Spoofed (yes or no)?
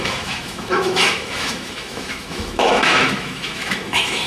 yes